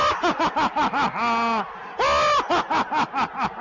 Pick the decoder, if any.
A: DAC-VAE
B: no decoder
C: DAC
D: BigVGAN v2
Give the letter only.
B